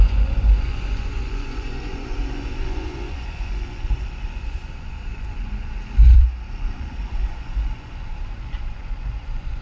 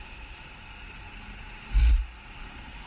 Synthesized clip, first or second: first